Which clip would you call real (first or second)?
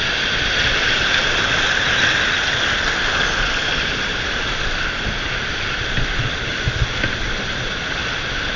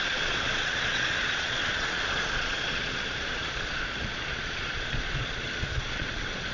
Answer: first